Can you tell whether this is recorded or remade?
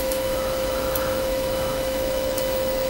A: remade